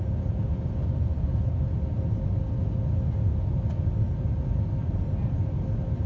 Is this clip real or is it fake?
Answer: real